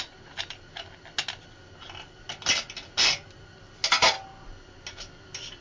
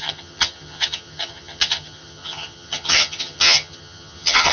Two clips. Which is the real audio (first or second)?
first